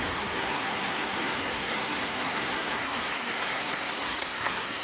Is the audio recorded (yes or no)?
no